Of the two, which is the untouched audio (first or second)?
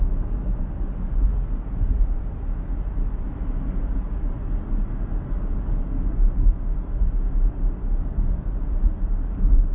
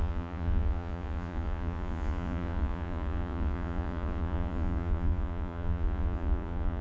first